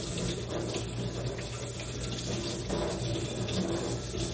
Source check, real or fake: real